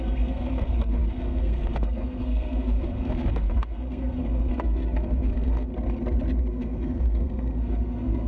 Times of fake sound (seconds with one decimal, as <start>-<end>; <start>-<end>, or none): 0.0-5.7; 6.4-8.3